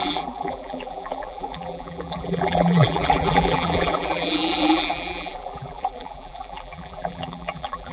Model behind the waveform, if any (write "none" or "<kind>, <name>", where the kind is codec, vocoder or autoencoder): vocoder, BigVGAN v2